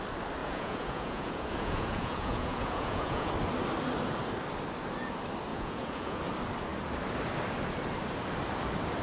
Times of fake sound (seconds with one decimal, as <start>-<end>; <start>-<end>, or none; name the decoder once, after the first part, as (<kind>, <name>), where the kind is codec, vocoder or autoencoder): 0.4-3.3 (vocoder, Vocos); 5.5-6.2